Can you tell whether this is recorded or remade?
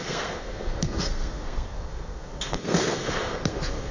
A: remade